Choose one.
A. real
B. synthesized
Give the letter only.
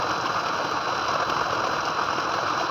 A